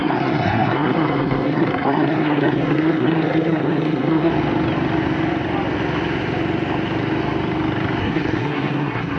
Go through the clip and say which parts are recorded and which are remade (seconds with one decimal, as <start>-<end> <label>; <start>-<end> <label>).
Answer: 0.0-4.3 remade; 4.3-8.0 recorded; 8.0-9.2 remade

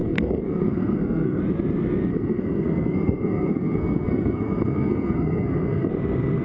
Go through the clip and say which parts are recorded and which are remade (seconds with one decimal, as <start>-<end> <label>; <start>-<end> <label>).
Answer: 0.0-1.4 remade; 1.4-2.1 recorded; 2.1-5.9 remade; 5.9-6.4 recorded

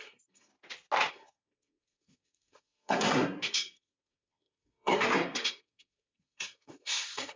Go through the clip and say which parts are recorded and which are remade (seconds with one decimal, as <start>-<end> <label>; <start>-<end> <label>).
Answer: 0.0-0.5 remade; 0.5-1.1 recorded; 1.1-7.4 remade

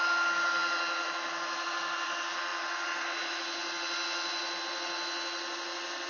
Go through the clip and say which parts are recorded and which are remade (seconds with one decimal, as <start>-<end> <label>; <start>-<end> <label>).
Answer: 0.0-6.1 recorded

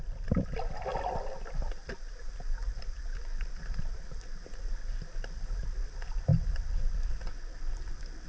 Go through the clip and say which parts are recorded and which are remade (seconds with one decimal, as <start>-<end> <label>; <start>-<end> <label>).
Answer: 0.0-8.3 recorded